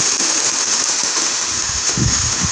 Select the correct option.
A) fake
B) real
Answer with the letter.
A